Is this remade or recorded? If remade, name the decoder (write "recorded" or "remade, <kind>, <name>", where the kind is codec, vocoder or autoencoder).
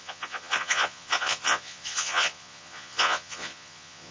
remade, vocoder, Vocos